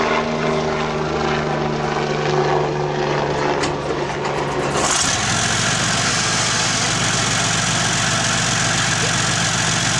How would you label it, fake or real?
real